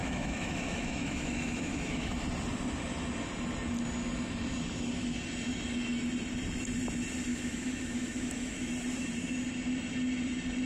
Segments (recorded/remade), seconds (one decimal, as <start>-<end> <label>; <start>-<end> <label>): 0.0-2.1 remade; 2.1-7.3 recorded; 7.3-8.7 remade; 8.7-10.7 recorded